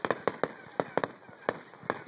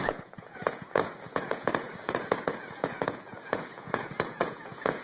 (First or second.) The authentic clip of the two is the first